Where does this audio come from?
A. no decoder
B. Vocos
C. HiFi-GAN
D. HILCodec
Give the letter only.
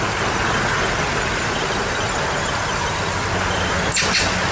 A